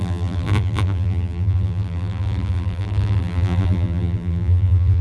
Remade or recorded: remade